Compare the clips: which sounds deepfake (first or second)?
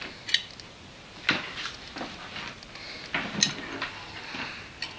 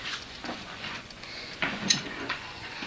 second